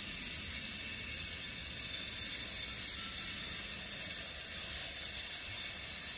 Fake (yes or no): no